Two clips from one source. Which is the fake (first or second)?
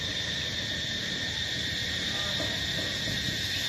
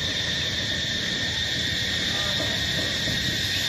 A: second